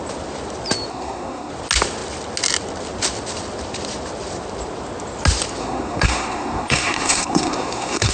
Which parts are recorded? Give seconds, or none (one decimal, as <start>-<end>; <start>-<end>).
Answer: 0.0-0.9; 1.5-5.6